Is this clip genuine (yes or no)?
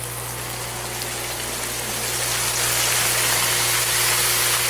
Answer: yes